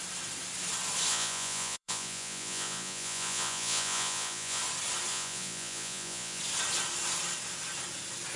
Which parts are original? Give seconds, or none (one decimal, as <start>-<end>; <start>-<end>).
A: 0.0-1.1; 4.6-5.1; 6.4-8.4